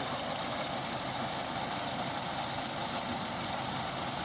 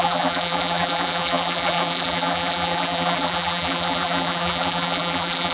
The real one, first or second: first